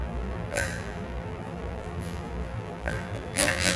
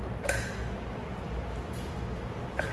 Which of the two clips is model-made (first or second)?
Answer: first